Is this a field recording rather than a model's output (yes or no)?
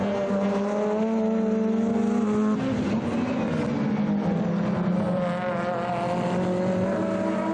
yes